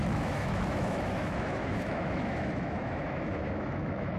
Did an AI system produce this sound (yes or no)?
yes